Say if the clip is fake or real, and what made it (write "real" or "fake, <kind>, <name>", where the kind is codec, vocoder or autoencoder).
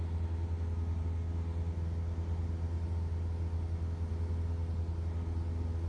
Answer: real